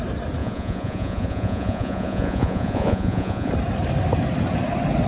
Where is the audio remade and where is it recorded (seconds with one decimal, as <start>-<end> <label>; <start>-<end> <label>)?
0.0-0.4 recorded; 0.4-3.5 remade; 3.5-5.1 recorded